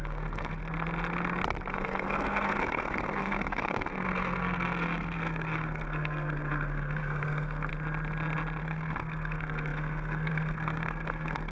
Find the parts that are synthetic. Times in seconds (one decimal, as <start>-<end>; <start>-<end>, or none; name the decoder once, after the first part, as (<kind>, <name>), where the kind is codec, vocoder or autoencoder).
0.0-0.6 (codec, SNAC); 1.7-7.7; 8.6-11.5